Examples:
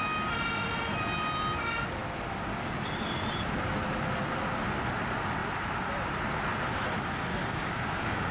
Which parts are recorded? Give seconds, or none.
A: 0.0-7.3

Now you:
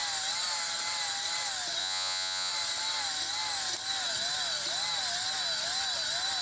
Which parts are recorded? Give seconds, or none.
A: 0.0-1.8; 2.5-6.4

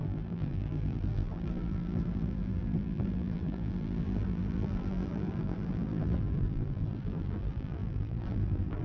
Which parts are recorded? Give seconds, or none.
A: none

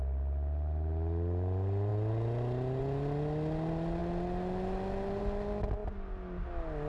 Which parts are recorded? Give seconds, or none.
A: 0.0-6.9

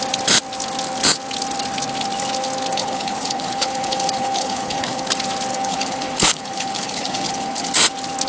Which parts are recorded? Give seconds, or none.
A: 0.0-2.7; 5.1-5.5; 7.7-8.3